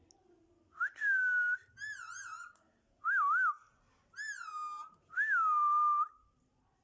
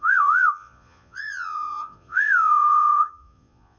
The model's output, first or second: second